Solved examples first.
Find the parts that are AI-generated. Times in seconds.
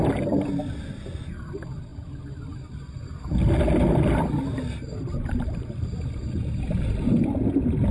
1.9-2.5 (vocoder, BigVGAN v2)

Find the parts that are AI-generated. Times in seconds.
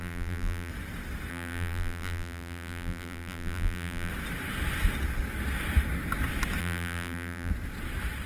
0.0-0.7 (vocoder, BigVGAN v2); 1.3-4.1; 6.6-7.5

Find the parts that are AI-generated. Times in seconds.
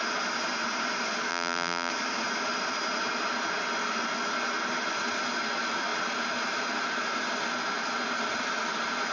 1.3-1.9 (vocoder, BigVGAN v2)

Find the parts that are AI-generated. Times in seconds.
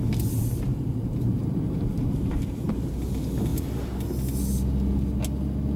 1.1-2.9 (vocoder, BigVGAN v2)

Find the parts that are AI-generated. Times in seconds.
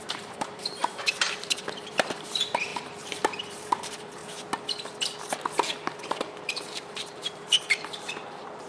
0.0-4.2 (vocoder, BigVGAN v2); 6.1-8.7